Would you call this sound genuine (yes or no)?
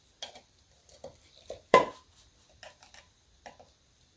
no